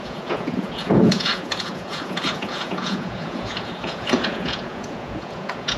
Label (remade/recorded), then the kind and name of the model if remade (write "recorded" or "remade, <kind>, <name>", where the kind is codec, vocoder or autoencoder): remade, vocoder, Vocos